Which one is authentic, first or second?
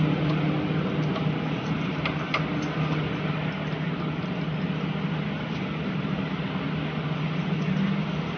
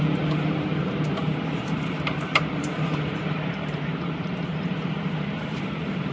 first